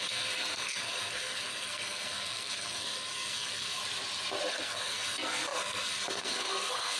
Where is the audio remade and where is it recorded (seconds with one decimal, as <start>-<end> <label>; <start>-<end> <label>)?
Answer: 0.0-3.8 remade; 3.8-4.5 recorded; 4.5-7.0 remade